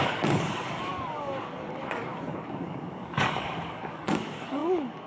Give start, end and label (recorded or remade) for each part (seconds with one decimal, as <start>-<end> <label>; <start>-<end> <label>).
0.0-5.1 remade